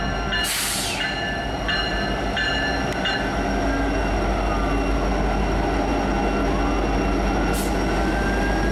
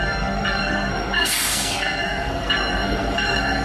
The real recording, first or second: first